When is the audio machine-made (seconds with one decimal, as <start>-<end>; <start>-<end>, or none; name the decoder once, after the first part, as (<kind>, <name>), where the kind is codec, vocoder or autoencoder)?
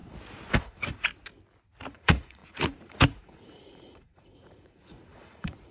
0.6-1.1 (vocoder, Vocos); 1.9-5.7